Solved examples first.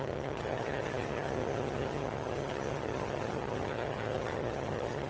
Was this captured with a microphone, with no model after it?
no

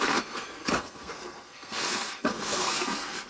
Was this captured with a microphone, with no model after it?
no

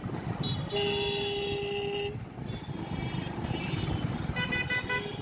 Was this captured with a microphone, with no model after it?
yes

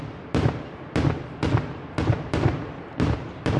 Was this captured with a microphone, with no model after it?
yes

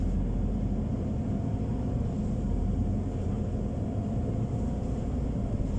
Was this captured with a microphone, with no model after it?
yes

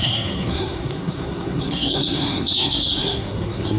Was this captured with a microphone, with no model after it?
no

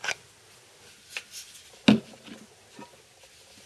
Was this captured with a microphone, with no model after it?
yes